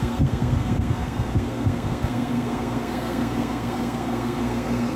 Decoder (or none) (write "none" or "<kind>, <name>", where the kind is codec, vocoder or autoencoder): codec, SNAC